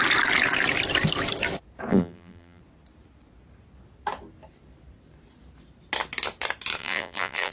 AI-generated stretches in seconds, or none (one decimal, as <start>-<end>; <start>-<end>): 1.9-2.6; 6.8-7.5